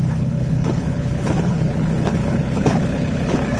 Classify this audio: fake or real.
fake